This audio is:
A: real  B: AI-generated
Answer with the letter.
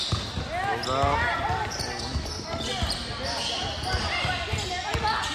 A